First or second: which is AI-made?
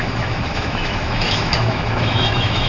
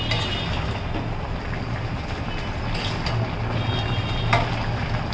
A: first